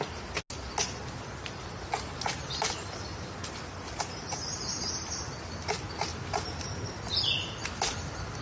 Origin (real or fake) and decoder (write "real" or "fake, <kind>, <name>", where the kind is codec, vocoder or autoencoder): real